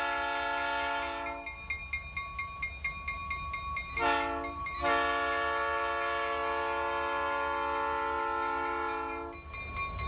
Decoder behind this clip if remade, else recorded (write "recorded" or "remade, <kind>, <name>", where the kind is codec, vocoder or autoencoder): recorded